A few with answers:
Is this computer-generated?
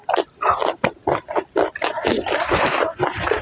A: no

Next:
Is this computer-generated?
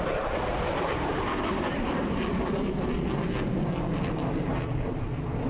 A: no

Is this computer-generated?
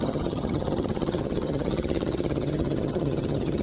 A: yes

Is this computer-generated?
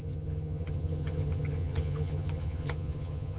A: yes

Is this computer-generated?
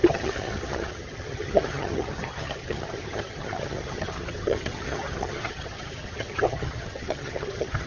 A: yes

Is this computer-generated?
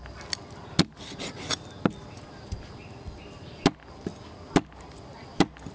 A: no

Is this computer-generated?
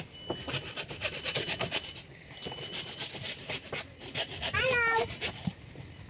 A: no